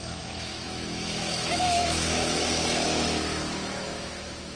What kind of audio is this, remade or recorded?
remade